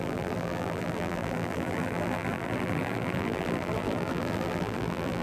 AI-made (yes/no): yes